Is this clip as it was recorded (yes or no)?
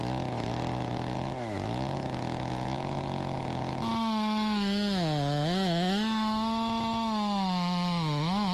no